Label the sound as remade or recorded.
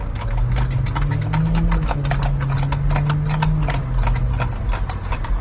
recorded